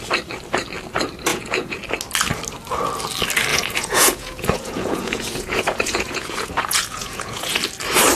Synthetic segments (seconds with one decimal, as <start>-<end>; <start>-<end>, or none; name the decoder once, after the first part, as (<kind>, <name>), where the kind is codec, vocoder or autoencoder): 1.3-1.8 (vocoder, Vocos); 3.5-7.6